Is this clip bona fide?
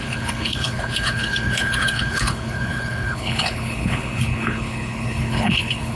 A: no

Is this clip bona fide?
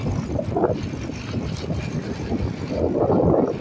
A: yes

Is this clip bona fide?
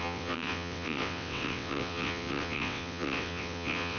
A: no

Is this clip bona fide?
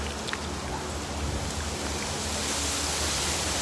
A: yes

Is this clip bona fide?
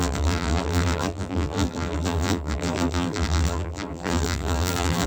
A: no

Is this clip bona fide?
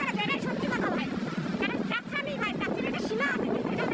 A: yes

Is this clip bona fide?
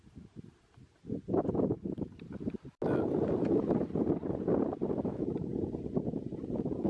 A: yes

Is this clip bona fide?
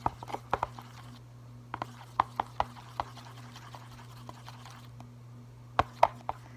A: yes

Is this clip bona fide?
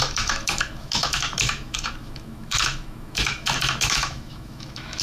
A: no